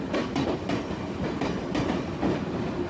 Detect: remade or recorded recorded